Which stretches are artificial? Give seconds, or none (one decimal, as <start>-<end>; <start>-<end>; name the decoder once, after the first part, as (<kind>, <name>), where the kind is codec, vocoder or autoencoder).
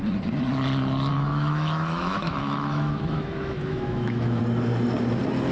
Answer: 1.1-4.4 (autoencoder, DAC-VAE)